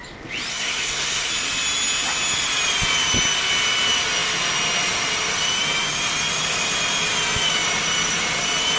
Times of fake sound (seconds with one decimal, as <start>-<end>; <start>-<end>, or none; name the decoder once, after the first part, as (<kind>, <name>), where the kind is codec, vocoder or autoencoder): 0.5-1.3 (codec, SNAC)